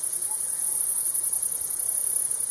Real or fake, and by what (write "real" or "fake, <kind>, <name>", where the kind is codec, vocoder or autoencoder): fake, vocoder, Vocos